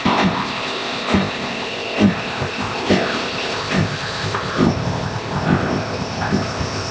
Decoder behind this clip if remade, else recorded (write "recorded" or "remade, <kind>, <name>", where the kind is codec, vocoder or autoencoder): remade, codec, ZipCodec